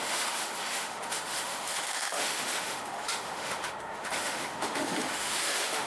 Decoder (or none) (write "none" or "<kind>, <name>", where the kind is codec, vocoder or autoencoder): autoencoder, DAC-VAE